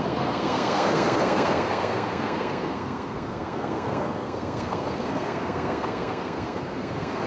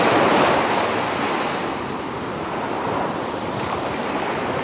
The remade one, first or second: first